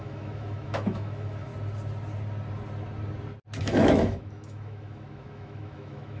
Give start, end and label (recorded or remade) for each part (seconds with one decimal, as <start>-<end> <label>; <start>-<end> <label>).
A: 0.0-1.5 remade; 1.5-3.6 recorded; 3.6-6.2 remade